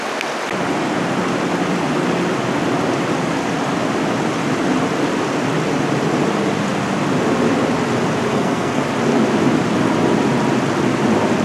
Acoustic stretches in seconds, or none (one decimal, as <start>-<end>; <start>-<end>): 0.0-8.3; 8.8-11.4